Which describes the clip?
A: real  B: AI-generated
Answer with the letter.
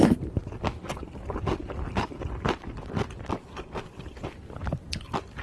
A